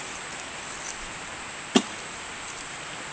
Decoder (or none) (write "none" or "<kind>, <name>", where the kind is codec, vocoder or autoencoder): none